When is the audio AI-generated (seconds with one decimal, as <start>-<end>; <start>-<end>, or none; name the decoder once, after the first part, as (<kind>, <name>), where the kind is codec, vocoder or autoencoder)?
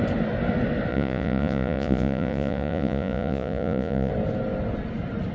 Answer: 0.9-4.1 (vocoder, Vocos)